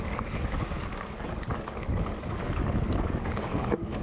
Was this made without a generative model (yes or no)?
no